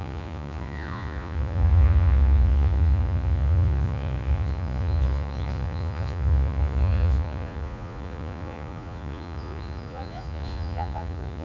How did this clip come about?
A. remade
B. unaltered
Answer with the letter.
A